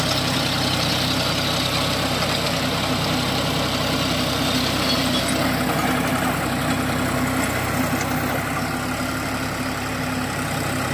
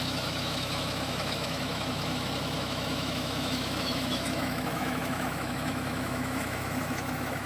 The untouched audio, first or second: first